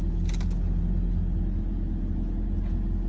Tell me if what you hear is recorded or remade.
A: recorded